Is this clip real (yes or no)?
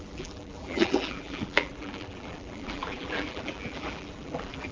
no